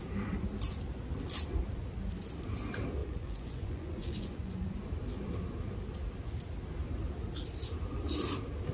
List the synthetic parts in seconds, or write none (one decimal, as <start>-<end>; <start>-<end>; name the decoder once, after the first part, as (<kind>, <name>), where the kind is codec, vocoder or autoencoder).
3.0-4.8 (vocoder, Vocos)